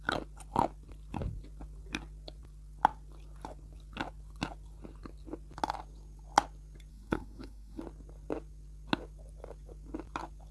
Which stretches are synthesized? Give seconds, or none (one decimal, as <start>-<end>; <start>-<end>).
6.9-7.8